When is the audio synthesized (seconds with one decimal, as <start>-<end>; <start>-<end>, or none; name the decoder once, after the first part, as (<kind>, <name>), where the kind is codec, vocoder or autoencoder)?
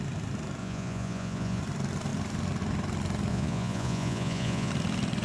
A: 0.6-1.6 (vocoder, Vocos); 3.3-4.7